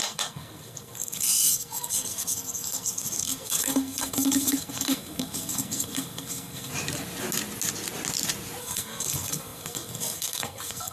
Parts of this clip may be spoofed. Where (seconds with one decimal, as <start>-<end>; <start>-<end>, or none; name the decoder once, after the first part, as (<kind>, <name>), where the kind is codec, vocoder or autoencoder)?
0.0-6.7 (codec, SNAC); 8.6-10.9